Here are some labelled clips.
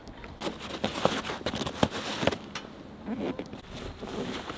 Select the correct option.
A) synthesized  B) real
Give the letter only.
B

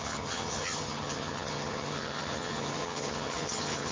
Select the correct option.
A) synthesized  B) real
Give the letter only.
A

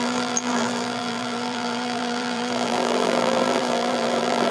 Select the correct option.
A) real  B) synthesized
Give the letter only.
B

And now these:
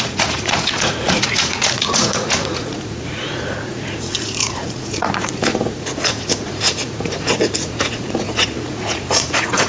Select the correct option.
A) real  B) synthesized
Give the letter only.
B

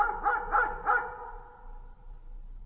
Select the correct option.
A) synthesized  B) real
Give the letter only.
B